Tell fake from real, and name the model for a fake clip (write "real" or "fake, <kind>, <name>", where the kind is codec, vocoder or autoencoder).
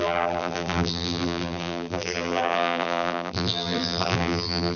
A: fake, vocoder, BigVGAN v2